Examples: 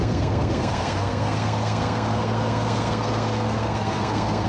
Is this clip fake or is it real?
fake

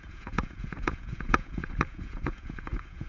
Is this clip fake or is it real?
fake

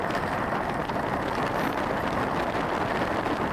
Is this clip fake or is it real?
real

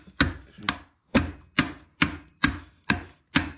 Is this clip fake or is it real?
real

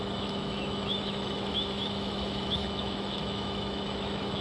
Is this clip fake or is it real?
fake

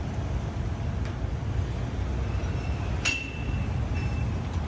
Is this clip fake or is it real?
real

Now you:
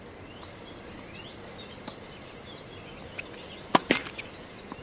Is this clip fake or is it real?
fake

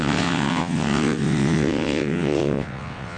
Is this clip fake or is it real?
fake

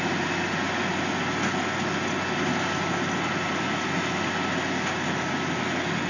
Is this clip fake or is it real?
real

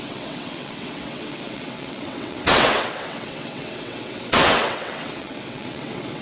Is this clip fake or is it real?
fake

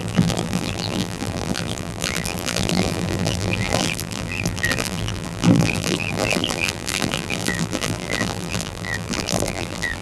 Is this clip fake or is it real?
fake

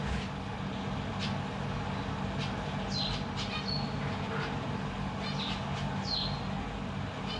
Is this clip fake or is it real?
real